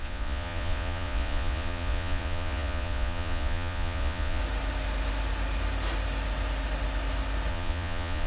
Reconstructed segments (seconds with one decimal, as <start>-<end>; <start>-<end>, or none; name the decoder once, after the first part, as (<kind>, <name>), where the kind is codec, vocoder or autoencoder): 0.0-4.4 (vocoder, Vocos); 7.5-8.3